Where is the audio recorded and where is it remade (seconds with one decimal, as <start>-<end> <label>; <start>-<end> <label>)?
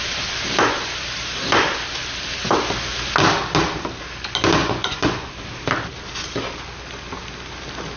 0.0-4.6 recorded; 4.6-5.3 remade; 5.3-8.0 recorded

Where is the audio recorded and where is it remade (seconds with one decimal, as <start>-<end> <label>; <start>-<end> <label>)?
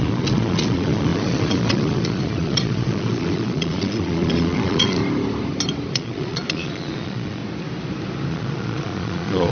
0.0-5.0 remade; 5.0-5.9 recorded; 5.9-7.4 remade; 7.4-8.3 recorded; 8.3-9.5 remade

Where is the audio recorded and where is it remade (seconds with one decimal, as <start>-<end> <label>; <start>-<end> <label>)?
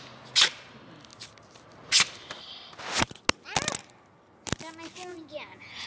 0.0-5.1 recorded; 5.1-5.9 remade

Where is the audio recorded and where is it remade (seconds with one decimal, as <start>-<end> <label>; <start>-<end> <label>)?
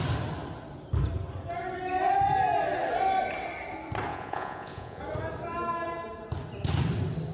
0.0-4.1 recorded; 4.1-5.0 remade; 5.0-7.3 recorded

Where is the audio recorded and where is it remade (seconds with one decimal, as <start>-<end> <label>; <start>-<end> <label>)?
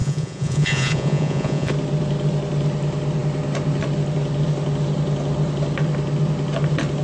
0.0-1.7 remade; 1.7-7.0 recorded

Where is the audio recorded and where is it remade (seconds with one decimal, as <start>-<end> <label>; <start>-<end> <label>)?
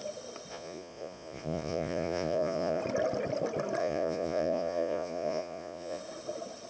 0.0-0.5 recorded; 0.5-2.8 remade; 2.8-3.8 recorded; 3.8-6.0 remade; 6.0-6.7 recorded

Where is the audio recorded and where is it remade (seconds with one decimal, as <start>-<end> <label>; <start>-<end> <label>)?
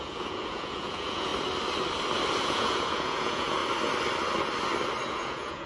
0.0-1.3 remade; 1.3-2.4 recorded; 2.4-3.6 remade; 3.6-5.1 recorded; 5.1-5.7 remade